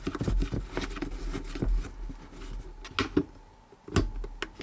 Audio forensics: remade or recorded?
recorded